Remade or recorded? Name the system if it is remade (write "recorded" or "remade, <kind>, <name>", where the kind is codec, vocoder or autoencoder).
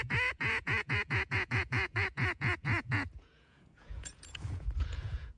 remade, vocoder, Vocos